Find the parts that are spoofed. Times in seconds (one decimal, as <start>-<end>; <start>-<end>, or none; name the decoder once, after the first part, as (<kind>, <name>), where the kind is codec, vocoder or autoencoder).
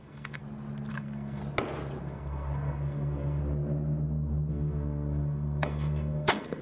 0.0-0.4 (codec, SNAC); 0.9-1.4; 2.0-3.4; 4.5-6.6